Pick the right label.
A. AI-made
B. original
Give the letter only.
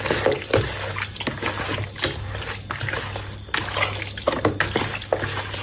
B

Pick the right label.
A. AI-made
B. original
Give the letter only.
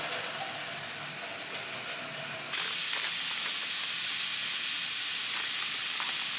B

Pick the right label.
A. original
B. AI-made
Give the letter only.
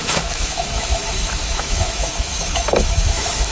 B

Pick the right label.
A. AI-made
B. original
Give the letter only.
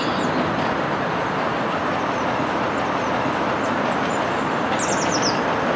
B